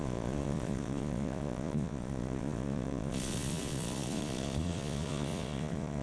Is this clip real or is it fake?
fake